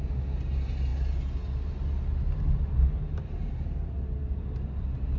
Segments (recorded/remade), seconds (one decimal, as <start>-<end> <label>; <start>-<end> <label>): 0.0-5.2 recorded